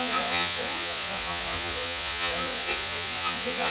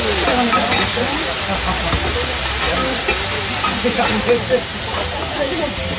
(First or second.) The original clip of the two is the second